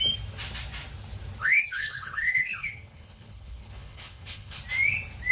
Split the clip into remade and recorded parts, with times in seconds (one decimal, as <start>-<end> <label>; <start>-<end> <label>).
0.0-1.4 recorded; 1.4-4.6 remade; 4.6-5.3 recorded